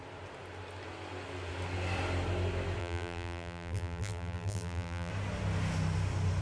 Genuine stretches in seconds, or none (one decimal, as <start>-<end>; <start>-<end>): 0.0-2.8; 5.1-6.4